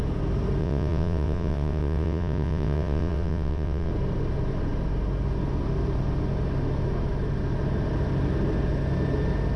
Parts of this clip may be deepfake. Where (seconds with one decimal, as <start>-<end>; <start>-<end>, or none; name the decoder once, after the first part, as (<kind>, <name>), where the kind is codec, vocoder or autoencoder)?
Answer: 0.6-3.9 (vocoder, WaveNeXt)

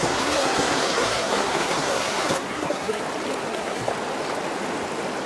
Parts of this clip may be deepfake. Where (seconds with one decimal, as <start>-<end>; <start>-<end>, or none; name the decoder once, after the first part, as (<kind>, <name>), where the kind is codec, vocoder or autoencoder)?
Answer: 0.0-3.0 (codec, SNAC); 3.5-3.9

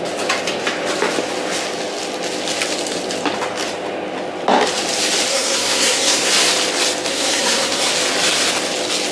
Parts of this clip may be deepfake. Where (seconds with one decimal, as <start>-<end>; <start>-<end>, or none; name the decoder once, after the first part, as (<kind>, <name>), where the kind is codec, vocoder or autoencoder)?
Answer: 5.3-6.3 (codec, SNAC); 7.1-7.9

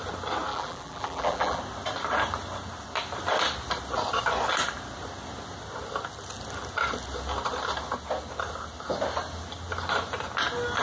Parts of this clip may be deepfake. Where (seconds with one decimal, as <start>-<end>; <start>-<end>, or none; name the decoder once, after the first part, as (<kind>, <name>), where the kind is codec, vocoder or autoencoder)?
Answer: 0.5-1.6 (vocoder, BigVGAN v2)

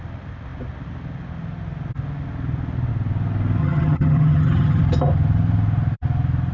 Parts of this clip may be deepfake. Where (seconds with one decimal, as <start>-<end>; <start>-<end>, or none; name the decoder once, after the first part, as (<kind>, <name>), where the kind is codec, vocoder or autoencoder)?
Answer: 3.6-4.8 (vocoder, HiFi-GAN)

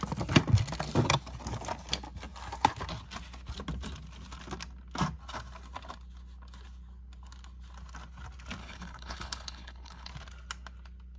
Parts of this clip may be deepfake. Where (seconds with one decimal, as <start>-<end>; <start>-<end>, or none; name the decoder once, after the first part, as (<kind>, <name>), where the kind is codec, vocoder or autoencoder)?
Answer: 8.6-10.1 (codec, HILCodec)